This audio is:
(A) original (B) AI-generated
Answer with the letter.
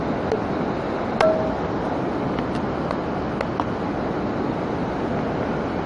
A